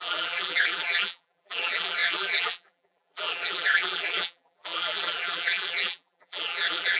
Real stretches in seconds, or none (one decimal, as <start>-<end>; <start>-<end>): none